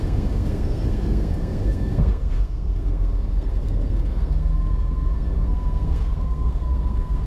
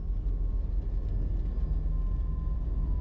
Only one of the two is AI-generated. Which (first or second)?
first